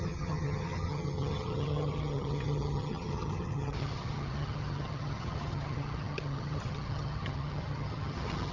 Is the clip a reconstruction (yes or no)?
yes